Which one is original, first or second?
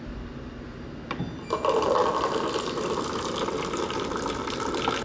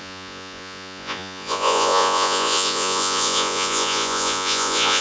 first